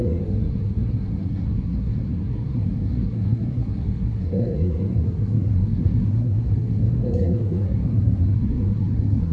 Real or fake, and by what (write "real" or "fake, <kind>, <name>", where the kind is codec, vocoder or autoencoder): fake, codec, SNAC